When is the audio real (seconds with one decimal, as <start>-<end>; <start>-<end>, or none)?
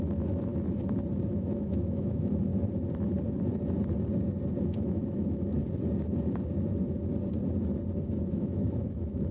0.5-1.3; 2.5-4.6; 5.6-8.2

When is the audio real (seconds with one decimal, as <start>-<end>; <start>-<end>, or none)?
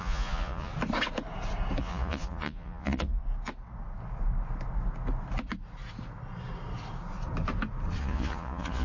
0.7-1.8; 3.2-8.0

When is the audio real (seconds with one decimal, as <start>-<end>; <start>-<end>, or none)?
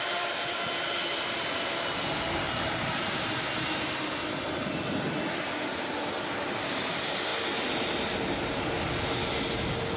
0.0-10.0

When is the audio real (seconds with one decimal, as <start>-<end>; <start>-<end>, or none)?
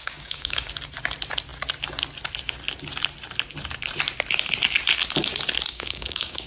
0.7-5.7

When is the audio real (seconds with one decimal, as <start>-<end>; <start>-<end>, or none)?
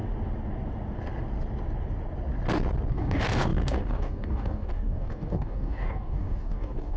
0.0-2.9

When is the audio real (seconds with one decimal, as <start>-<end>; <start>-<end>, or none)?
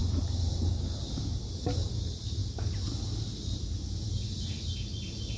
0.0-5.4